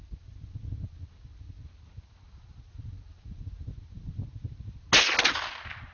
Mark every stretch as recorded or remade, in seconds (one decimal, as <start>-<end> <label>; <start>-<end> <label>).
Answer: 0.0-5.9 recorded